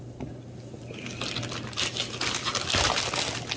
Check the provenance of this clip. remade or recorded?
recorded